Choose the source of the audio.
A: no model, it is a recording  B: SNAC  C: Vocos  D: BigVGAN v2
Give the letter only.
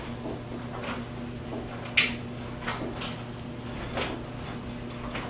A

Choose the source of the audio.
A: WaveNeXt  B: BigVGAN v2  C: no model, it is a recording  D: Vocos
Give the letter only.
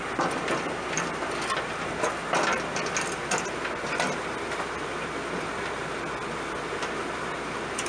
C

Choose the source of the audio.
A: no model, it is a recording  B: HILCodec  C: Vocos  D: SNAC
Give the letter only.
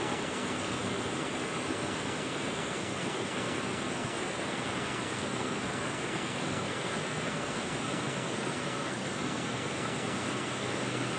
D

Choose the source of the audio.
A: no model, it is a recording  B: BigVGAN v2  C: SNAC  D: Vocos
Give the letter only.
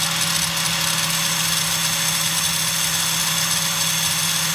A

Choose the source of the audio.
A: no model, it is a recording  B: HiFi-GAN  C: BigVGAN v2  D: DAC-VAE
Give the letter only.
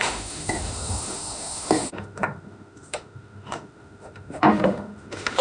D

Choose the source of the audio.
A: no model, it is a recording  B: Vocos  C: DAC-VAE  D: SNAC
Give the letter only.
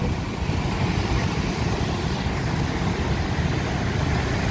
A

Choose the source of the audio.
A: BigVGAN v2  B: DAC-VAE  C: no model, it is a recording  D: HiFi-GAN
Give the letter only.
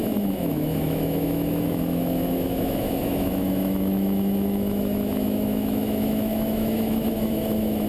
B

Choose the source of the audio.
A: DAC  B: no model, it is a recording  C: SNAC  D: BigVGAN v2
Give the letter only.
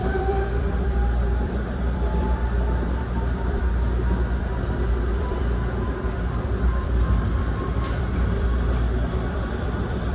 D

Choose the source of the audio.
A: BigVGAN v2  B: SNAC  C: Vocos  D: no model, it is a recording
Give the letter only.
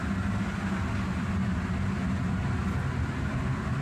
D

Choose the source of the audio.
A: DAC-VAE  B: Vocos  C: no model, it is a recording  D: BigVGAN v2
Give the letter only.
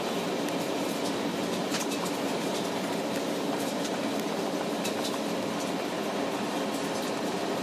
C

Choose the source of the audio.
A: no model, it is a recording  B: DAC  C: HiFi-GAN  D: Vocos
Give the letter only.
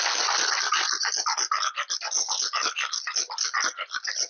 A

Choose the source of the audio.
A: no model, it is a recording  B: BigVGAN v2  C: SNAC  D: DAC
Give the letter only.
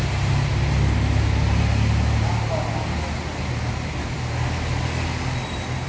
A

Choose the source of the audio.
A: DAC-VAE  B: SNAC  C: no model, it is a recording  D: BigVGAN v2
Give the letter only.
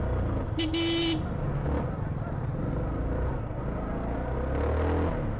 C